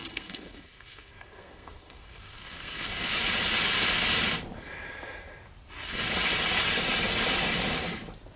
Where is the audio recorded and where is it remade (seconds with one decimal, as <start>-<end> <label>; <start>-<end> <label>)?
0.0-3.0 remade; 3.0-8.4 recorded